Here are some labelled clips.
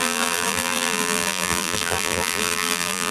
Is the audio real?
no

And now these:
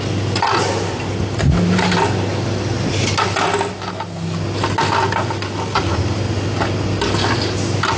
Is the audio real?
yes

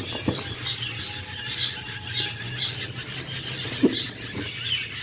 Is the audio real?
yes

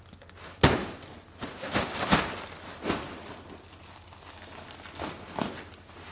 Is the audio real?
yes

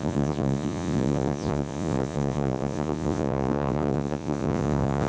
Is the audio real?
no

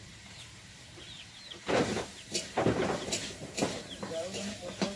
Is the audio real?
no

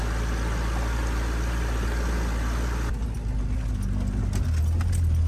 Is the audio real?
yes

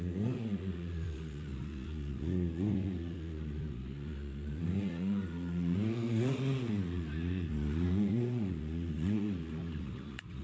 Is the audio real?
no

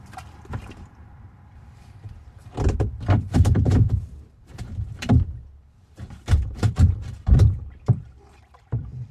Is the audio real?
no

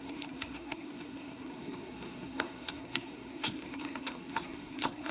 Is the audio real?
no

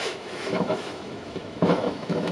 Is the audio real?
no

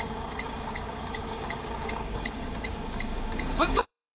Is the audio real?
no